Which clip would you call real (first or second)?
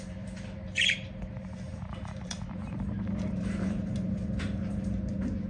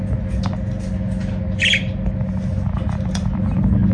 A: second